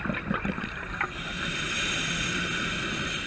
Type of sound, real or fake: real